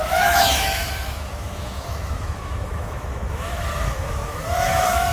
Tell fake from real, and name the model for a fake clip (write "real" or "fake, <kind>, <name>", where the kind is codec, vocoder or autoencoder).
fake, autoencoder, DAC-VAE